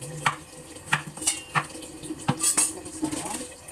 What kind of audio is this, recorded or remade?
recorded